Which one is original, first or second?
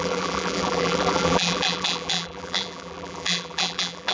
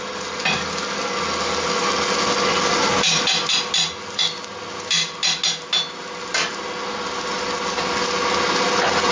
second